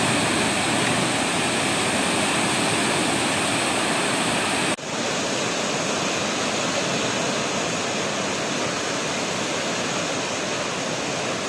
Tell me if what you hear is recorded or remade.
recorded